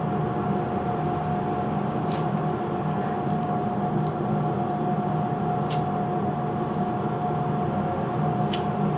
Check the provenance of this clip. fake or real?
real